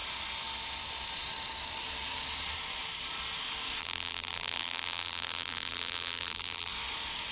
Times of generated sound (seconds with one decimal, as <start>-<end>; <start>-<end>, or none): 3.8-6.7